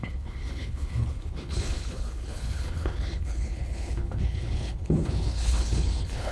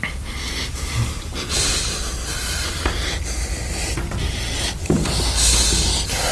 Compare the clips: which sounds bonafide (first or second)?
second